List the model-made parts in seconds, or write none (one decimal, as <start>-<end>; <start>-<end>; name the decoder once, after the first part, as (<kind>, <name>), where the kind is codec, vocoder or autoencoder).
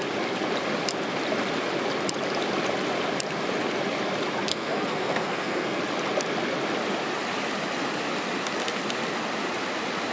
4.5-5.8 (codec, SNAC)